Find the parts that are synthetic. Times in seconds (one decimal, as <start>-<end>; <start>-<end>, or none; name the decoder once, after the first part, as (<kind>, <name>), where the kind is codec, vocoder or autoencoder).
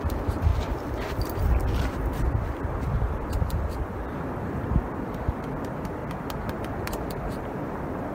0.5-4.7 (vocoder, BigVGAN v2)